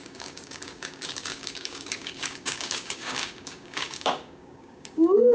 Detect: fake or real fake